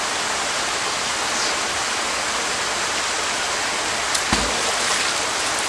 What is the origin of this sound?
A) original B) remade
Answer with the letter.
A